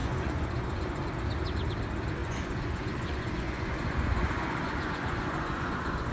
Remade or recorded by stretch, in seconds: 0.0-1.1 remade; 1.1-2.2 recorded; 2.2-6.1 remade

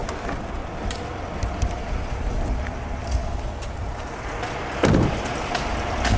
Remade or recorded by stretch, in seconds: 0.0-6.2 recorded

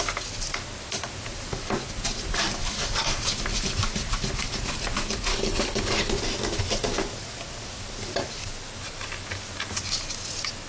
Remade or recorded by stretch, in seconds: 0.0-5.3 recorded; 5.3-6.1 remade; 6.1-10.7 recorded

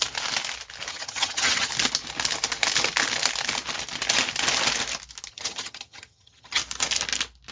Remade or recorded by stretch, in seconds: 0.0-0.9 recorded; 0.9-1.7 remade; 1.7-5.3 recorded; 5.3-6.6 remade; 6.6-7.5 recorded

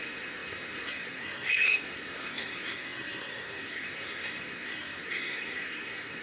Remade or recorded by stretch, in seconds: 0.0-6.2 remade

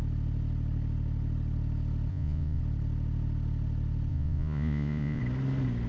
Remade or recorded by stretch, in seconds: 0.0-2.1 recorded; 2.1-2.6 remade; 2.6-4.1 recorded; 4.1-5.2 remade; 5.2-5.9 recorded